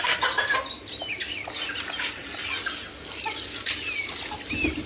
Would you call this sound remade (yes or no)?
no